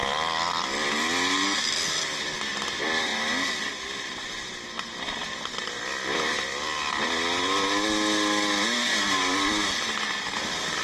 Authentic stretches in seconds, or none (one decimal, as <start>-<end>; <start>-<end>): 0.0-10.8